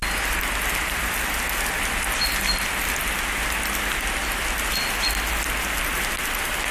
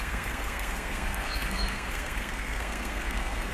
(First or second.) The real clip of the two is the first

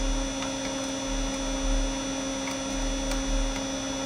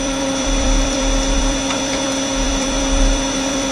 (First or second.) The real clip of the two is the first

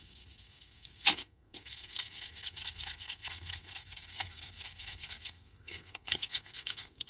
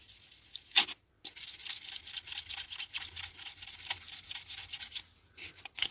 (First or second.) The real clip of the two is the second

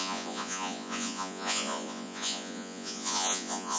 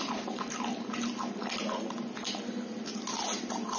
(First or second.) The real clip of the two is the second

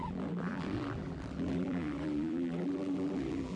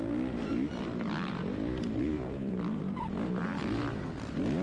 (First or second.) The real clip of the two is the second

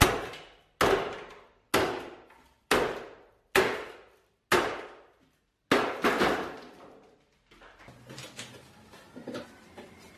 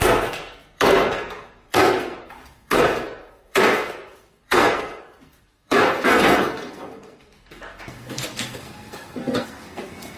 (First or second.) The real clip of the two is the first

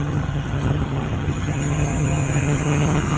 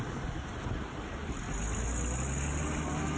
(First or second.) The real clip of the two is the second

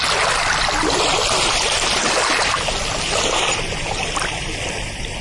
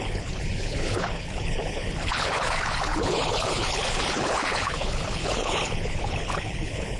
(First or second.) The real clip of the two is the first